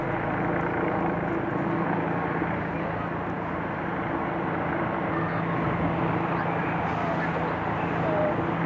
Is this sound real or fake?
real